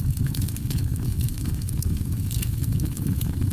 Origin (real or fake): fake